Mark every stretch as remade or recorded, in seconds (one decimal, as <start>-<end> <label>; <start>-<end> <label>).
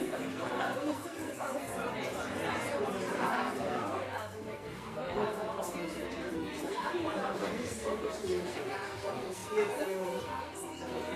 0.0-1.7 remade; 1.7-3.1 recorded; 3.1-11.2 remade